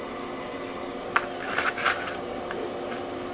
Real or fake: real